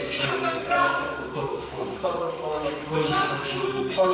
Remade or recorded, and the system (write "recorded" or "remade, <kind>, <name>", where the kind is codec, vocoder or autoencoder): remade, codec, SNAC